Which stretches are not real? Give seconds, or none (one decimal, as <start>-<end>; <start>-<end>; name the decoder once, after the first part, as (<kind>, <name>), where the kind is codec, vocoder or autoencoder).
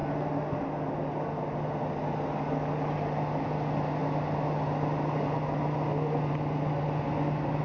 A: none